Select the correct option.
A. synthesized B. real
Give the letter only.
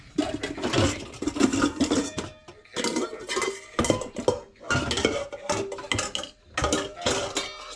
B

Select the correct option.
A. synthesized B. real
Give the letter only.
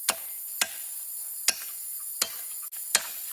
B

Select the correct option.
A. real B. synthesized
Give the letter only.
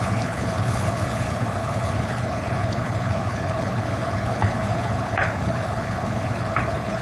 B